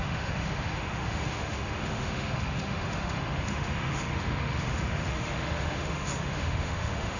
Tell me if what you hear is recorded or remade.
remade